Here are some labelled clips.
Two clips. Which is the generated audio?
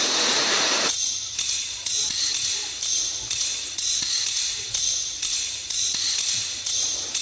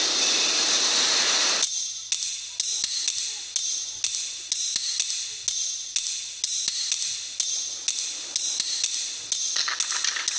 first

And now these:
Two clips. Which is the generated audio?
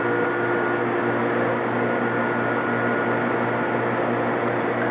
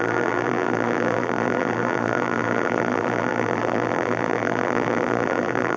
second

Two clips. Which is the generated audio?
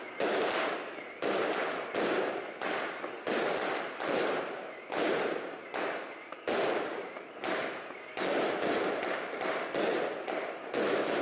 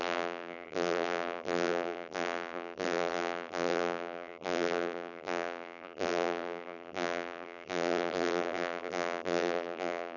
second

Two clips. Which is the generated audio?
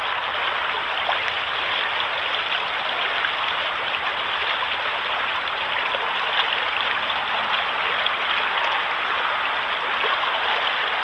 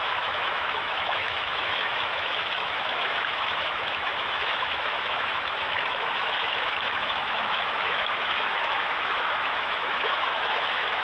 second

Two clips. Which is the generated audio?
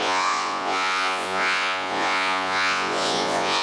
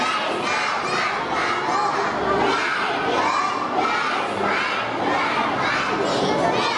first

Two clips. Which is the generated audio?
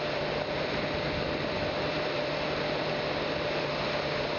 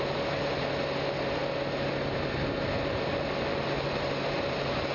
first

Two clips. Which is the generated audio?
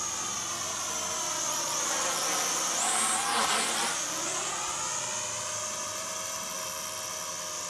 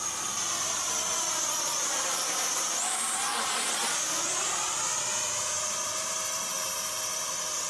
second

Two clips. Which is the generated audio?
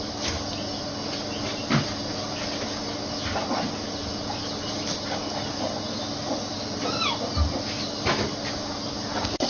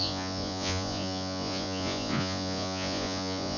second